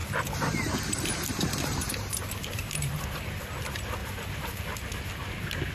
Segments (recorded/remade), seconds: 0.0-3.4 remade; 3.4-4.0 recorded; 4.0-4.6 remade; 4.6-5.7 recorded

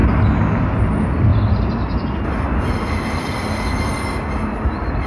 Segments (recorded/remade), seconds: 0.0-5.1 recorded

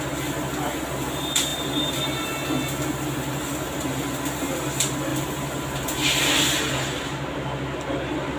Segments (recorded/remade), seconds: 0.0-5.1 recorded; 5.1-5.6 remade; 5.6-8.4 recorded

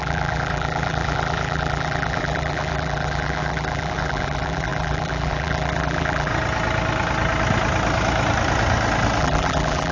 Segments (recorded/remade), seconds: 0.0-6.3 remade; 6.3-9.2 recorded; 9.2-9.9 remade

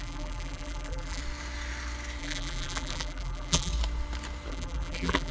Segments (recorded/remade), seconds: 0.0-1.2 remade; 1.2-2.2 recorded; 2.2-3.7 remade; 3.7-4.5 recorded; 4.5-5.3 remade

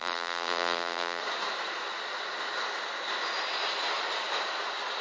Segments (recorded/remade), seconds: 0.0-1.2 remade; 1.2-5.0 recorded